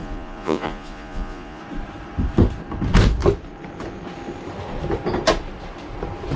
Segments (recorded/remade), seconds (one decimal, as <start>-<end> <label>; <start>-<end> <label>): 0.0-1.6 remade; 1.6-6.4 recorded